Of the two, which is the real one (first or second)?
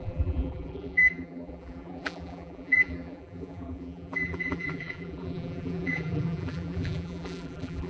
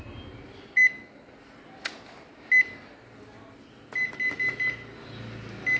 second